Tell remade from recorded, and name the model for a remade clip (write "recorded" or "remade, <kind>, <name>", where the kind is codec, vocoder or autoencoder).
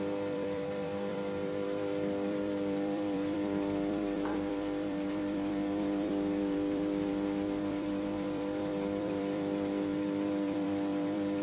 remade, vocoder, BigVGAN v2